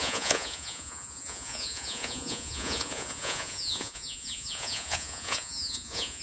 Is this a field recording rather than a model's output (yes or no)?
no